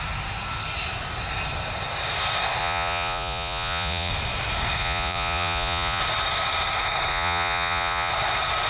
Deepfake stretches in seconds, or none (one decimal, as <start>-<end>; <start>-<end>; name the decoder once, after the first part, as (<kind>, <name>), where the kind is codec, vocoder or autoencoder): 2.6-4.1 (vocoder, Vocos); 4.8-6.0; 7.1-8.1